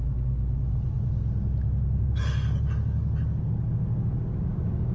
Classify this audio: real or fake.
real